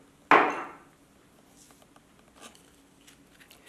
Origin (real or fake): real